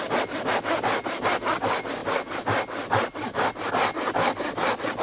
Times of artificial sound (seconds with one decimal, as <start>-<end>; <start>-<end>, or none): none